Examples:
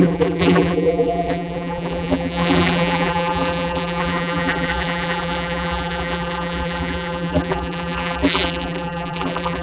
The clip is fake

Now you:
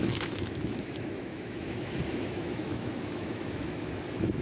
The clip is fake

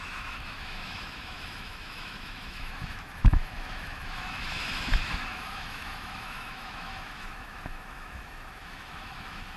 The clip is fake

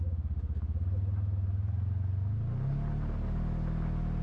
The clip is real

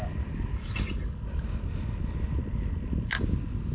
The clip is real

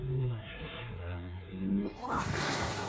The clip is fake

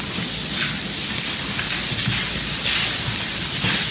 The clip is real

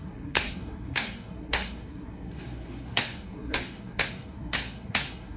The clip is fake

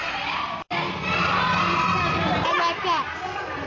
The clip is real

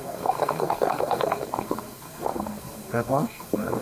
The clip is fake